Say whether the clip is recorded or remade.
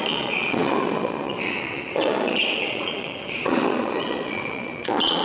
remade